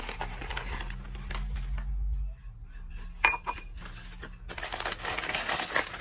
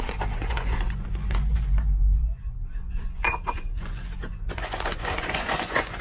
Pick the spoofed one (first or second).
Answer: second